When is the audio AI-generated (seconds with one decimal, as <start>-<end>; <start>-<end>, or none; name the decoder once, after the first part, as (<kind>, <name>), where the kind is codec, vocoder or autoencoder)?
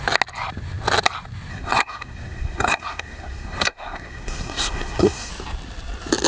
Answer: 1.5-5.3 (codec, SNAC)